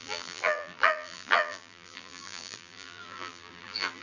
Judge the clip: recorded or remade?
remade